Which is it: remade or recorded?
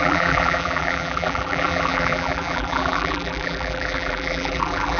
remade